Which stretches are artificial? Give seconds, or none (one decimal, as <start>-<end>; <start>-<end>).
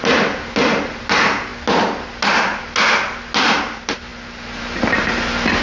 none